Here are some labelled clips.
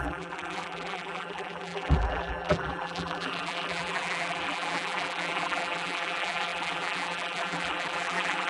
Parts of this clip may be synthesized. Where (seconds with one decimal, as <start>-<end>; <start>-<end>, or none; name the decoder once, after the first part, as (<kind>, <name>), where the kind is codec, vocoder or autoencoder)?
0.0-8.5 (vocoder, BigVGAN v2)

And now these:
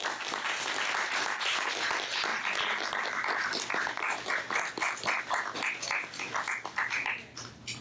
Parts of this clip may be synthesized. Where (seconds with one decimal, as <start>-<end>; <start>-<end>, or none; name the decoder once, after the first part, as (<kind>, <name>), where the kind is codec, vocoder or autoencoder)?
none

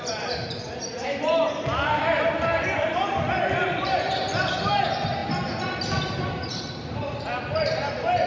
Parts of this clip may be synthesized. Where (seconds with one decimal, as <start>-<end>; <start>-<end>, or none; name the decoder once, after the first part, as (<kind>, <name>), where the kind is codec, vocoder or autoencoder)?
0.0-5.2 (vocoder, BigVGAN v2); 6.3-8.3